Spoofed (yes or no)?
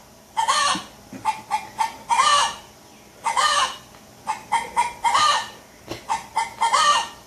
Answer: yes